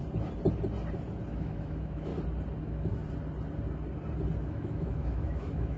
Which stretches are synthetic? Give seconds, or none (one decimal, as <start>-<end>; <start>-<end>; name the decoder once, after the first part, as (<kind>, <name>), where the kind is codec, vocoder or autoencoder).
1.3-2.1 (autoencoder, DAC-VAE); 2.6-3.0; 4.4-5.8